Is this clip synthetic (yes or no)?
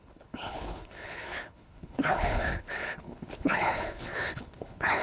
yes